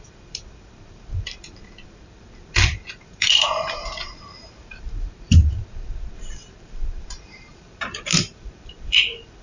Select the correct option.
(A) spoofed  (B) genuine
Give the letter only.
A